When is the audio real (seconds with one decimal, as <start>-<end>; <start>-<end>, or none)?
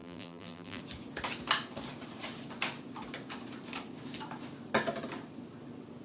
0.8-6.0